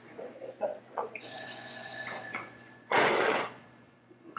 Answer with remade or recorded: remade